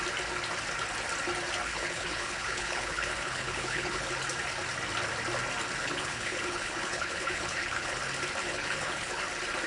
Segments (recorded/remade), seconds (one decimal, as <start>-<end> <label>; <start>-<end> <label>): 0.0-1.7 recorded; 1.7-4.1 remade; 4.1-5.8 recorded; 5.8-8.0 remade; 8.0-8.4 recorded; 8.4-9.2 remade; 9.2-9.7 recorded

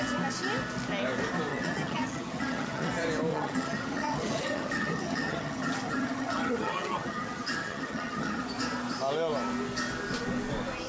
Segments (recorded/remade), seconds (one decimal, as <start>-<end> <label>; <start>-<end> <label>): 0.0-1.5 recorded; 1.5-2.9 remade; 2.9-3.3 recorded; 3.3-8.4 remade; 8.4-10.9 recorded

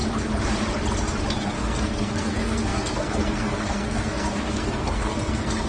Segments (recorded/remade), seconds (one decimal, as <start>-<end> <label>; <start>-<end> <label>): 0.0-1.3 recorded; 1.3-5.7 remade